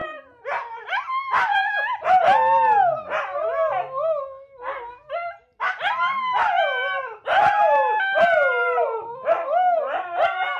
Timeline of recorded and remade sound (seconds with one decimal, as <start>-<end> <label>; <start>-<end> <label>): 0.0-10.6 recorded

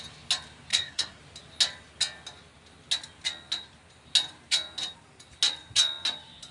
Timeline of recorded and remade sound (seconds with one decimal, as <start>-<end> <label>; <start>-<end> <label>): 0.0-0.7 recorded; 0.7-1.2 remade; 1.2-6.5 recorded

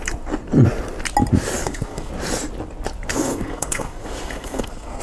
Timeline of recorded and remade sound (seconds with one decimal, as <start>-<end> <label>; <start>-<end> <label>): 0.0-1.6 recorded; 1.6-2.1 remade; 2.1-3.1 recorded; 3.1-5.0 remade

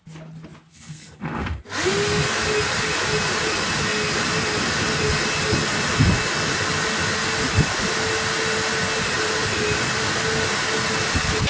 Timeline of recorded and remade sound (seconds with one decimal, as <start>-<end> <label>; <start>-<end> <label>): 0.0-0.7 recorded; 0.7-1.6 remade; 1.6-11.5 recorded

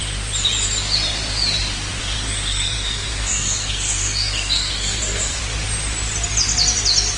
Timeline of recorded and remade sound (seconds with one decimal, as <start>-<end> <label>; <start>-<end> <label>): 0.0-2.0 recorded; 2.0-5.4 remade; 5.4-7.2 recorded

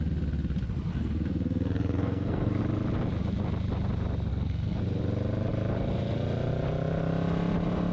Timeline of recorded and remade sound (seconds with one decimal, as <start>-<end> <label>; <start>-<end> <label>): 0.0-0.9 recorded; 0.9-2.6 remade; 2.6-4.3 recorded; 4.3-4.8 remade; 4.8-7.9 recorded